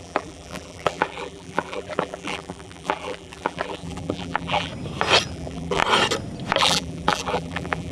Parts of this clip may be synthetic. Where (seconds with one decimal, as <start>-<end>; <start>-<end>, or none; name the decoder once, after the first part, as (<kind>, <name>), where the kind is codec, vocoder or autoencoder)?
0.0-4.7 (vocoder, BigVGAN v2); 5.3-5.8; 6.6-7.9